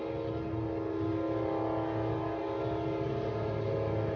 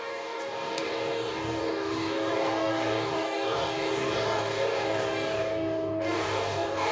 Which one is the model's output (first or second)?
second